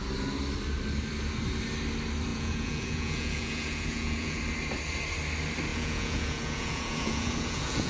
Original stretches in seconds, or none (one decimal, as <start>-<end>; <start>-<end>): 0.0-2.3; 4.4-5.7